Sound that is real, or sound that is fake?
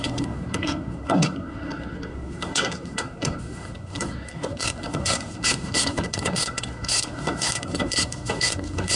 fake